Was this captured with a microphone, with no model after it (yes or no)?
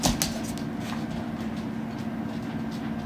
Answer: yes